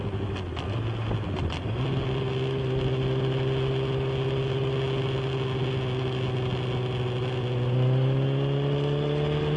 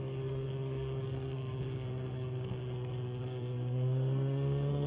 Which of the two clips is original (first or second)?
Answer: first